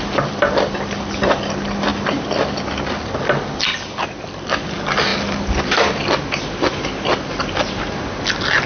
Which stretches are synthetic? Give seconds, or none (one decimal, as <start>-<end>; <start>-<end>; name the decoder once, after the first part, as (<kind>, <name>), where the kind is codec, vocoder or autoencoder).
none